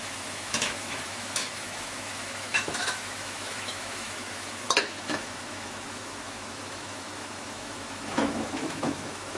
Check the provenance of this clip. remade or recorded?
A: remade